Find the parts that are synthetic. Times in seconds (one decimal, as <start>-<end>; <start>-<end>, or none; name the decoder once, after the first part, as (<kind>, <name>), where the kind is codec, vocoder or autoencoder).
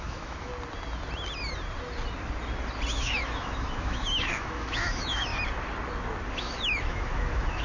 0.0-0.5 (autoencoder, DAC-VAE); 2.9-5.3; 6.3-7.6